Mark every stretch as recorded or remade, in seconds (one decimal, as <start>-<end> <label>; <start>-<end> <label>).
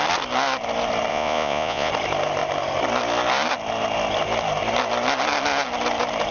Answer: 0.0-1.1 recorded; 1.1-1.9 remade; 1.9-6.3 recorded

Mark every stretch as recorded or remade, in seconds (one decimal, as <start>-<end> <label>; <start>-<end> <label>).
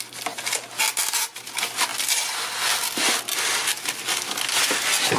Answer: 0.0-1.9 recorded; 1.9-4.2 remade; 4.2-5.2 recorded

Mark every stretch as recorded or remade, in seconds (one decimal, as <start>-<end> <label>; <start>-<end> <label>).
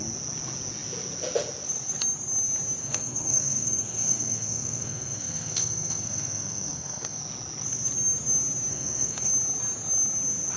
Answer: 0.0-2.8 recorded; 2.8-7.2 remade; 7.2-8.7 recorded; 8.7-9.3 remade; 9.3-10.6 recorded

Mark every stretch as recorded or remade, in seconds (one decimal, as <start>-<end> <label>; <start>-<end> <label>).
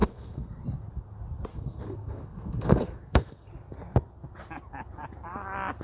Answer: 0.0-0.6 remade; 0.6-1.5 recorded; 1.5-3.5 remade; 3.5-5.8 recorded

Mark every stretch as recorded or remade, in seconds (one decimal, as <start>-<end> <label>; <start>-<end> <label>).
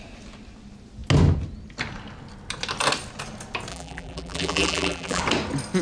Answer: 0.0-3.7 recorded; 3.7-5.2 remade; 5.2-5.8 recorded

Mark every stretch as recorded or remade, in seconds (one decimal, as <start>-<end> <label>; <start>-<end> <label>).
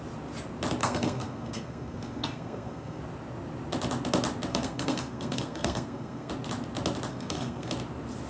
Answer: 0.0-0.8 recorded; 0.8-3.0 remade; 3.0-4.5 recorded; 4.5-6.3 remade; 6.3-7.1 recorded; 7.1-7.7 remade; 7.7-8.3 recorded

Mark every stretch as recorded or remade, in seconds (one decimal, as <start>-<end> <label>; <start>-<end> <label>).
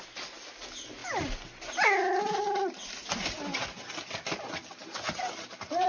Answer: 0.0-5.9 recorded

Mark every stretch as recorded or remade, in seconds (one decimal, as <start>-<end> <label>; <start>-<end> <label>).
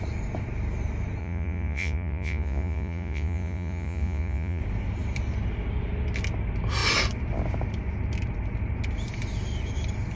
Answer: 0.0-1.2 recorded; 1.2-4.6 remade; 4.6-10.2 recorded